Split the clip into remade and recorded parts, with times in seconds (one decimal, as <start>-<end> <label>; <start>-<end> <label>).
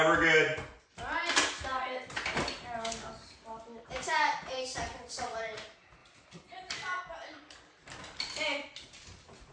0.0-9.5 recorded